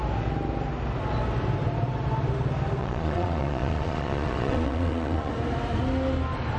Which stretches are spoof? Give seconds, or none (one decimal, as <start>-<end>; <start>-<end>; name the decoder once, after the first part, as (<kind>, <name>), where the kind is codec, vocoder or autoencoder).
2.8-5.3 (vocoder, Vocos)